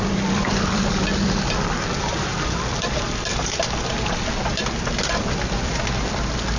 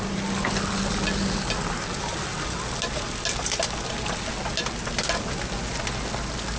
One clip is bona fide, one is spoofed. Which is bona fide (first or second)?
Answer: second